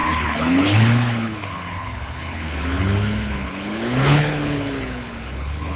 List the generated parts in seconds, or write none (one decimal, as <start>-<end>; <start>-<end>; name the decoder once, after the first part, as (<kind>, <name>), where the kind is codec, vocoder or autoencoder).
0.0-5.8 (codec, HILCodec)